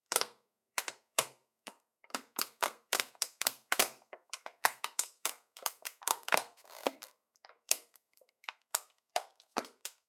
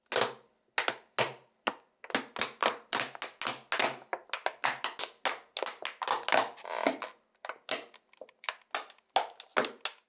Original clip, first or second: second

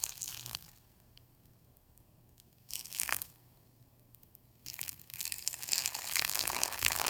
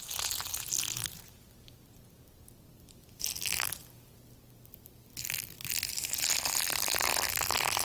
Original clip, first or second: second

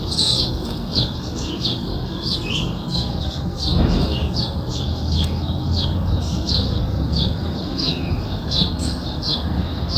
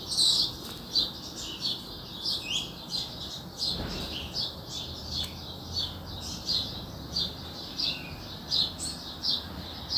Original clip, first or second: second